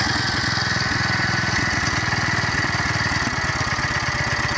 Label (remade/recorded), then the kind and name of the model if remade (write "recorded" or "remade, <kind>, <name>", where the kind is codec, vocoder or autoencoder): recorded